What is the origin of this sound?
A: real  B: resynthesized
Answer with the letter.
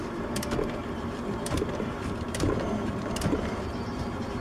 B